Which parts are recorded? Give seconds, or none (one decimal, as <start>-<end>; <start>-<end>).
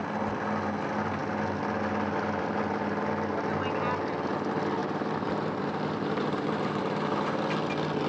0.0-4.8; 7.5-8.1